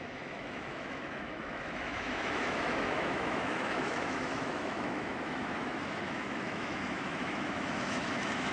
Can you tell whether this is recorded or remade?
remade